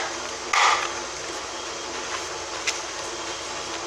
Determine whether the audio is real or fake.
real